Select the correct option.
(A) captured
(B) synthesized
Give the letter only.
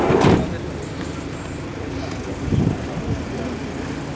A